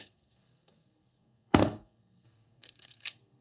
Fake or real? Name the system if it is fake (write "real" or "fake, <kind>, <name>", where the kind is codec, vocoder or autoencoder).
fake, codec, SNAC